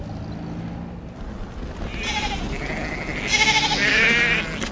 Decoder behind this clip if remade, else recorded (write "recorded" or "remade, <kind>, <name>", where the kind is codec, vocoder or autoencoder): recorded